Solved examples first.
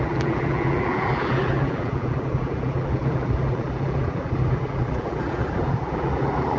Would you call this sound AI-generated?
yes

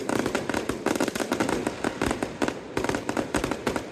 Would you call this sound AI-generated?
no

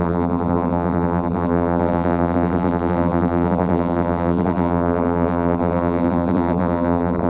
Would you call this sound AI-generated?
yes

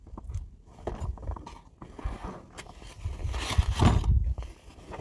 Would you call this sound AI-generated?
no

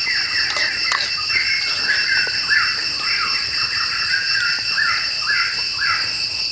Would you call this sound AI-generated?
no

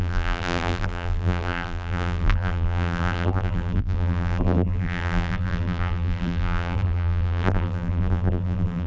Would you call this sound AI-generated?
yes